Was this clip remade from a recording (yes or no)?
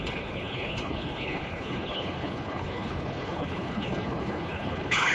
yes